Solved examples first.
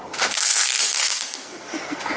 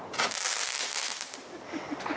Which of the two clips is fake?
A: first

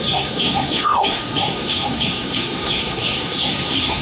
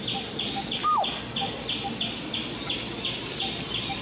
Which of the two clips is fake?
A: first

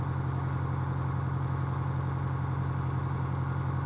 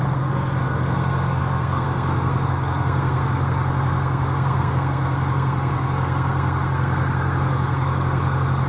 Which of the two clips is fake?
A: second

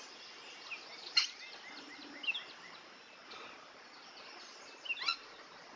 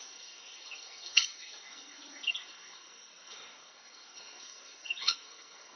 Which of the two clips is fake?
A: second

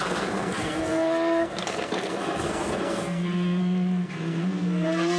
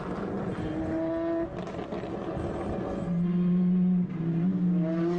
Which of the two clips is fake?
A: first